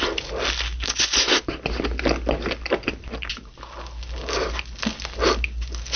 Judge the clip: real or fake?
real